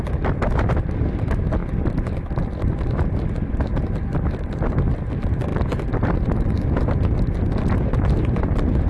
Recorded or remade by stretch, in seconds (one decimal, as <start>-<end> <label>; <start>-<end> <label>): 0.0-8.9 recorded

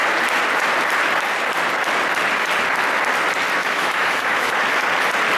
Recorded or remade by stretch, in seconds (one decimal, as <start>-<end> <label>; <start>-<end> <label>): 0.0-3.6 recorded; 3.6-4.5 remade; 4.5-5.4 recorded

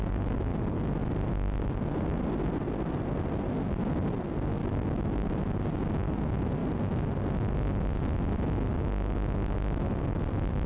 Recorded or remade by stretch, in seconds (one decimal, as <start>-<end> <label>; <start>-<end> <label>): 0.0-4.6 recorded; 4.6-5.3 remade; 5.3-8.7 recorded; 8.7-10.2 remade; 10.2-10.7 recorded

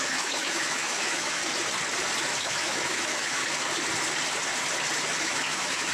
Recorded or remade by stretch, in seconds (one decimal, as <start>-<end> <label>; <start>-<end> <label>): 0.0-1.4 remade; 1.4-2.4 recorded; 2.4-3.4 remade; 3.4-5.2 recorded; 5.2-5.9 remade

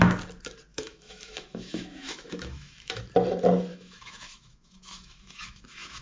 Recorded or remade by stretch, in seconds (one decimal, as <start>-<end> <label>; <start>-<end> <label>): 0.0-0.7 recorded; 0.7-3.0 remade; 3.0-3.7 recorded; 3.7-6.0 remade